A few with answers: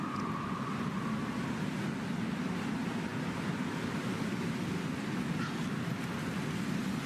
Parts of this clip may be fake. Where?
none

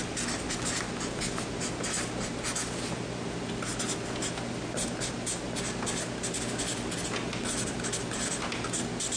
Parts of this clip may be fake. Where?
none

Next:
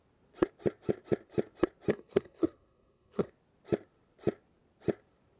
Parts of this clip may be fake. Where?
1.9-3.3 (codec, SNAC)

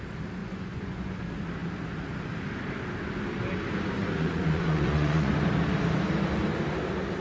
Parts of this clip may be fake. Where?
0.4-1.2 (vocoder, Vocos); 4.0-5.3

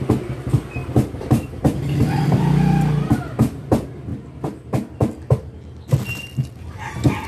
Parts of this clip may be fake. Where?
0.8-1.6 (vocoder, BigVGAN v2)

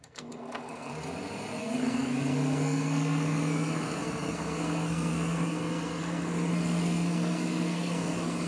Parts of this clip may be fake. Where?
0.0-0.9 (codec, SNAC); 1.6-8.5

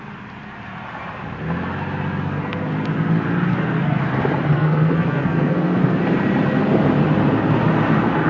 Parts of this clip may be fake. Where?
3.5-4.0 (codec, SNAC); 4.5-6.0